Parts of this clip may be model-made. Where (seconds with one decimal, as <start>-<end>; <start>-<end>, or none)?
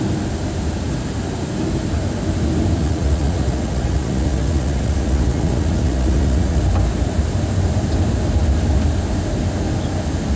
2.8-6.6